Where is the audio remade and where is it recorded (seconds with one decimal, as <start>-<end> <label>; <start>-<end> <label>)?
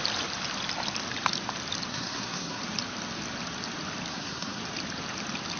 0.0-1.9 recorded; 1.9-2.6 remade; 2.6-4.1 recorded; 4.1-4.6 remade; 4.6-5.6 recorded